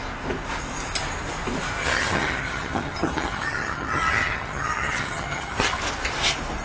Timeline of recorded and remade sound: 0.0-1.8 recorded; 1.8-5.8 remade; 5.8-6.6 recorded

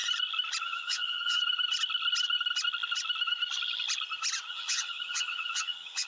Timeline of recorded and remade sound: 0.0-0.6 recorded; 0.6-1.4 remade; 1.4-4.5 recorded; 4.5-6.1 remade